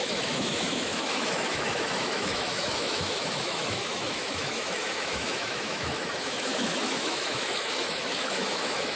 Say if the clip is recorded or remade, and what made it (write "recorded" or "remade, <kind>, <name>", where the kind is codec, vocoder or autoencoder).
remade, autoencoder, DAC-VAE